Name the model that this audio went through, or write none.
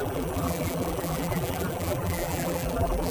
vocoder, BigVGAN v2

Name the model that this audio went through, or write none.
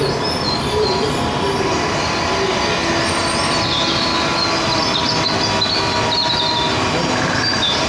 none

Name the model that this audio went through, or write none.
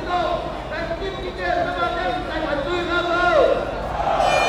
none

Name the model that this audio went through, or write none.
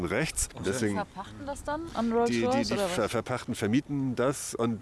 none